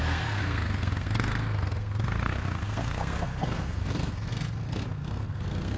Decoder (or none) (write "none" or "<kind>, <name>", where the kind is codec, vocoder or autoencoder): codec, SNAC